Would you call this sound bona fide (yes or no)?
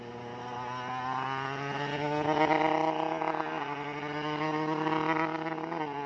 yes